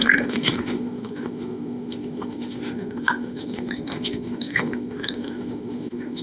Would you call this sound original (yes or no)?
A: no